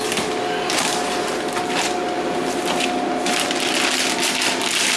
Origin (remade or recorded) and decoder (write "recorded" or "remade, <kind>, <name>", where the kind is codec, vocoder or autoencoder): recorded